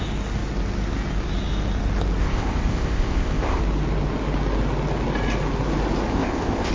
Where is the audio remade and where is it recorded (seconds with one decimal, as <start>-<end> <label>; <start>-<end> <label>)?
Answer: 0.0-2.2 recorded; 2.2-3.6 remade; 3.6-6.1 recorded; 6.1-6.7 remade